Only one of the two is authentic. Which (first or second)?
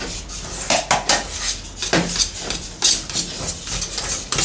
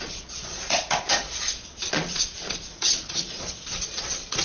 first